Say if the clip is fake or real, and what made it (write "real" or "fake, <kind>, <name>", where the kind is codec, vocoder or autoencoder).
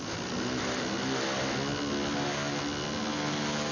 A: real